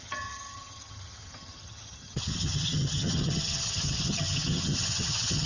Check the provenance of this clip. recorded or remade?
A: remade